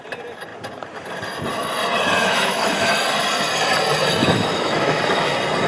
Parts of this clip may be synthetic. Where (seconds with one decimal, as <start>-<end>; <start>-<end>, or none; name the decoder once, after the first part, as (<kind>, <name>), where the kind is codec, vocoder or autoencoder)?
2.2-2.9 (autoencoder, DAC-VAE); 4.2-5.0